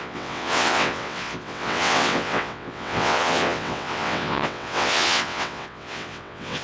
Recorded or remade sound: remade